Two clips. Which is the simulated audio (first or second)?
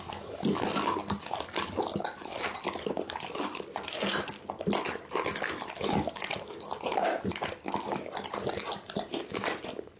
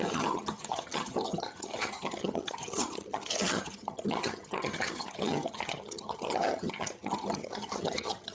second